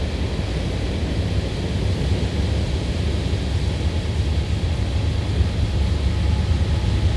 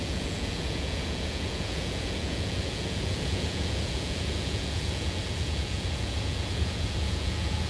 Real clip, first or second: first